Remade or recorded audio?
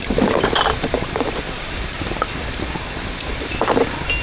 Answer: recorded